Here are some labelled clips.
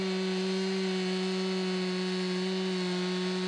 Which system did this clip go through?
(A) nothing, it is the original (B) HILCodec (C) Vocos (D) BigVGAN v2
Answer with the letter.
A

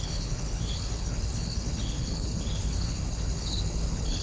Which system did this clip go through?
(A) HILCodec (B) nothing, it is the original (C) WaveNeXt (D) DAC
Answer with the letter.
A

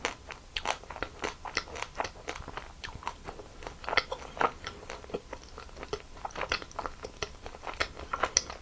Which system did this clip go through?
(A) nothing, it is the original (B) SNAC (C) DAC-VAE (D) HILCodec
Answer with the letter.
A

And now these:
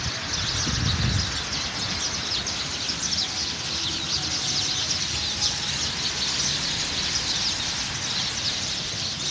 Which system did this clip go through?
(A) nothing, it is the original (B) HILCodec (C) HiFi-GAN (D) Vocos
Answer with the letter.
A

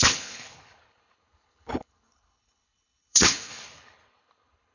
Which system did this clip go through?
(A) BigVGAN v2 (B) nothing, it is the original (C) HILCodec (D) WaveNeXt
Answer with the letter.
C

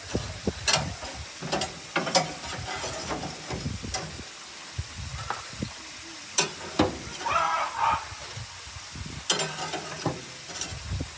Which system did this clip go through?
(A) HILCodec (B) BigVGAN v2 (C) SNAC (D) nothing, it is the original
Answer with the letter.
D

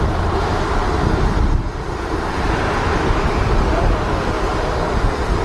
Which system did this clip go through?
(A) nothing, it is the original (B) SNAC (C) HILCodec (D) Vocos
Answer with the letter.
A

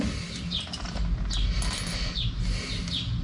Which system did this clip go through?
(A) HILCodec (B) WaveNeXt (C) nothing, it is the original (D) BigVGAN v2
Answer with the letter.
C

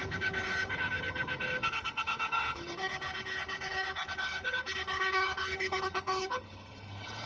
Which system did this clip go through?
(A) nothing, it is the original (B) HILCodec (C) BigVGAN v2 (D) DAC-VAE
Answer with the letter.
B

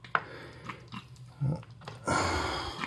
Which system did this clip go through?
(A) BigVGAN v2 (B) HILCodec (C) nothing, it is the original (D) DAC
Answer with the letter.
C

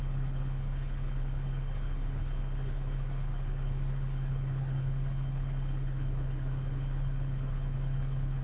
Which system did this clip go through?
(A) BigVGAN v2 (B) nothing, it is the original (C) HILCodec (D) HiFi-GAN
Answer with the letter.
C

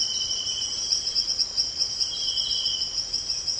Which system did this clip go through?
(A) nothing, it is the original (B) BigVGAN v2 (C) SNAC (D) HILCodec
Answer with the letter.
A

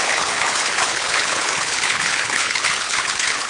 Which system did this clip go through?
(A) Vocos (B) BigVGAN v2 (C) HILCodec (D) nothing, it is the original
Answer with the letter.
C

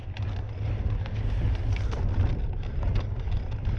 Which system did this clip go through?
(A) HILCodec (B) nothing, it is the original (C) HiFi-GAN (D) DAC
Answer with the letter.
B